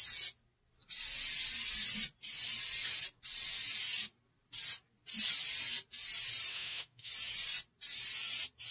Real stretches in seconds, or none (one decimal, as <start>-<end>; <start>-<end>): 0.0-6.5; 7.1-8.7